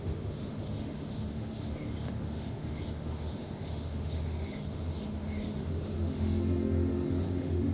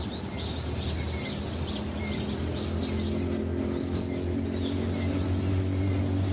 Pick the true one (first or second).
second